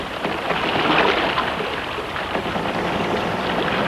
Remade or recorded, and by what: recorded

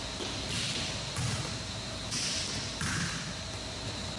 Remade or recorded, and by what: recorded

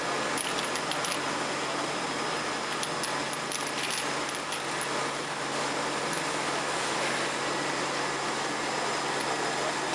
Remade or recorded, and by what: recorded